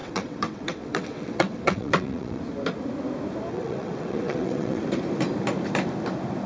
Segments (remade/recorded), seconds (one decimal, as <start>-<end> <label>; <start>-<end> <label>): 0.0-2.4 remade; 2.4-3.5 recorded; 3.5-4.8 remade; 4.8-6.5 recorded